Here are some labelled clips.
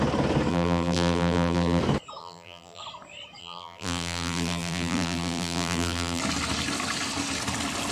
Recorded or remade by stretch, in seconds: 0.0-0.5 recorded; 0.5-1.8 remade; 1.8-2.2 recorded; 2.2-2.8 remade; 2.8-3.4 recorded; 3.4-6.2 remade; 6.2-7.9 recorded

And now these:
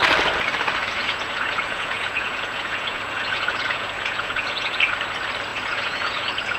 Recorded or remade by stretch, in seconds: 0.0-0.8 recorded; 0.8-4.8 remade; 4.8-5.5 recorded; 5.5-6.6 remade

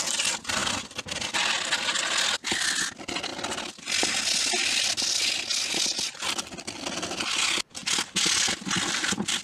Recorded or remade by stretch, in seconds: 0.0-9.4 recorded